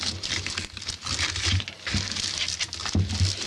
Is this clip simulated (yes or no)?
no